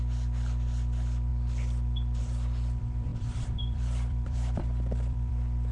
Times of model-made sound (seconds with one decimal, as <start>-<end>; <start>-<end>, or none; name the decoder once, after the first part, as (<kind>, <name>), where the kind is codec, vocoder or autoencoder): 3.1-5.3 (vocoder, BigVGAN v2)